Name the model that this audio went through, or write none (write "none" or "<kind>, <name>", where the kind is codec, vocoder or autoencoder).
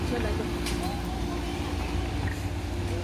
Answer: none